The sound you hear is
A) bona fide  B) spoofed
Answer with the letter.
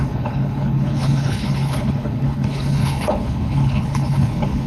B